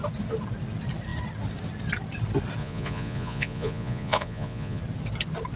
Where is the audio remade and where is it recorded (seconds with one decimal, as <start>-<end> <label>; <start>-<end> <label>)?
0.0-2.6 recorded; 2.6-4.8 remade; 4.8-5.6 recorded